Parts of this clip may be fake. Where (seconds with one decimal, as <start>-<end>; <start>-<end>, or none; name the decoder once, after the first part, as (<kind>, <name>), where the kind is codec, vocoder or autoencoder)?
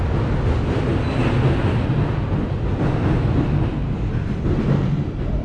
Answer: none